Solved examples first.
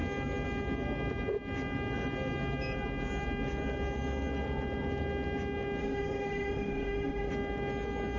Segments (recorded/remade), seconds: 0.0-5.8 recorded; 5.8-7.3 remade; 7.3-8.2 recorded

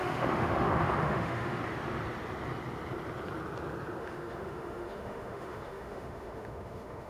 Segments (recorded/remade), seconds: 0.0-1.6 remade; 1.6-4.0 recorded; 4.0-7.1 remade

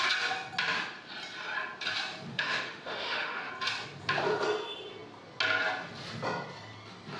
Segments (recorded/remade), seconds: 0.0-2.3 recorded; 2.3-3.5 remade; 3.5-7.2 recorded

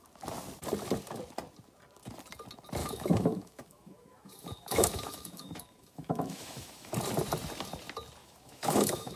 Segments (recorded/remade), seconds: 0.0-2.8 recorded; 2.8-6.9 remade; 6.9-8.2 recorded; 8.2-9.2 remade